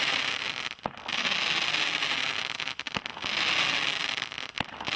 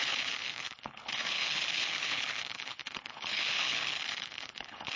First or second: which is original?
first